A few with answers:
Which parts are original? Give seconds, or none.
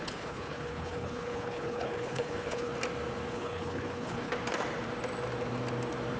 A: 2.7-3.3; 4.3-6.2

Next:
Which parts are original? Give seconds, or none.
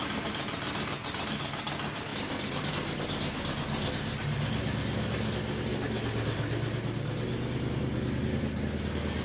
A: 0.0-9.2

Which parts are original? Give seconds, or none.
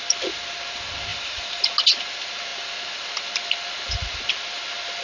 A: 0.0-1.1; 1.7-5.0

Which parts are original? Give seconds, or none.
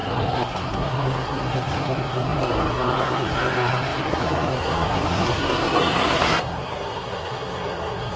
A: none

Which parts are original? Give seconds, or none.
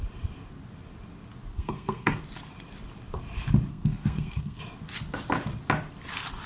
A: 0.0-1.5; 2.2-3.7; 4.6-6.5